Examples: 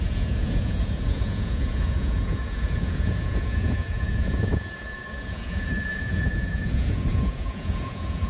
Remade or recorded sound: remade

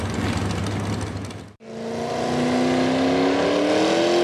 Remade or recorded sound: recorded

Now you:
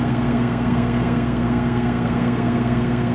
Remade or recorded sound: remade